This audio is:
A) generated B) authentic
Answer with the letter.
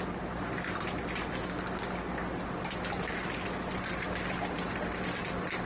B